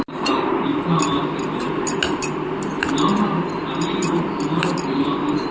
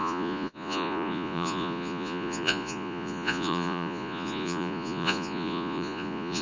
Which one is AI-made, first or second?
second